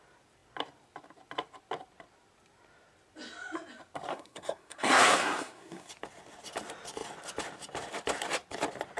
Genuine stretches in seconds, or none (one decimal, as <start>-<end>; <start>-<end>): 0.0-4.1; 5.9-9.0